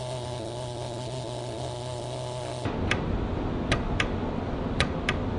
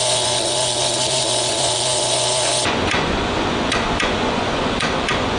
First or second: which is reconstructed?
second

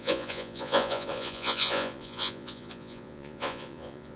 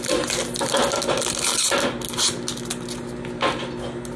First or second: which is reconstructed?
first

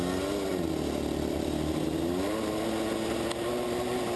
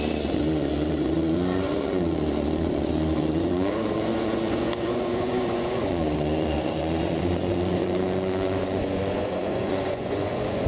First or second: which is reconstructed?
second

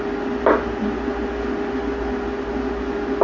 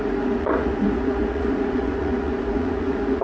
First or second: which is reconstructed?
second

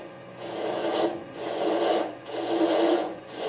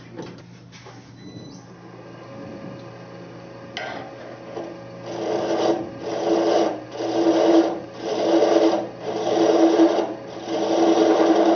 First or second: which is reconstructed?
first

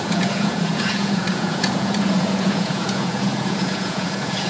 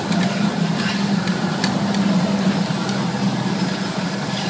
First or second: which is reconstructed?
first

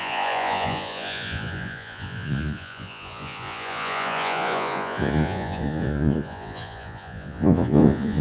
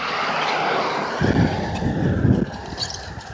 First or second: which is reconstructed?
first